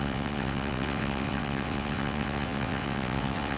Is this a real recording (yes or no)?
no